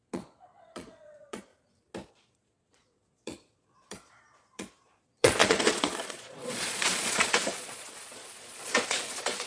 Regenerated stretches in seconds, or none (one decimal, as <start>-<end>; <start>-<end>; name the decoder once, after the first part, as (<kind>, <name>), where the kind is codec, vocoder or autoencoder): 0.0-1.5 (vocoder, Vocos); 2.1-9.5